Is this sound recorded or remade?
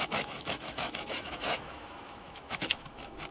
remade